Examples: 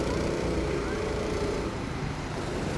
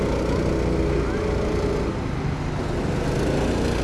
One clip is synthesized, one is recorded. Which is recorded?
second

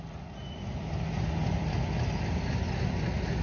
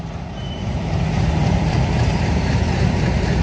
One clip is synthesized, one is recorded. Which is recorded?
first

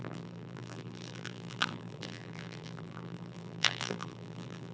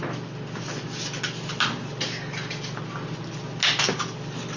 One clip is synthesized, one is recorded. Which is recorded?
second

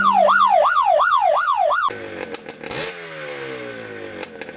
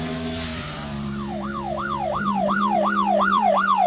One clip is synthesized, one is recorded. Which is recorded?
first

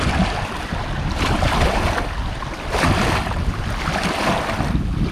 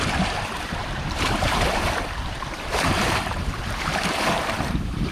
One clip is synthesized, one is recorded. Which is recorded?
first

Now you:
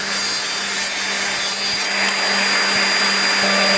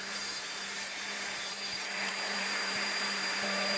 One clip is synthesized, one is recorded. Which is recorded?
first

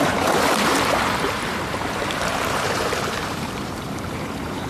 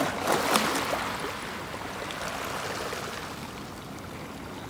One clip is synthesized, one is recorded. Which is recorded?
second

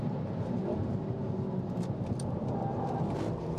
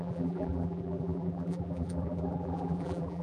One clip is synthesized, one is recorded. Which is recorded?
first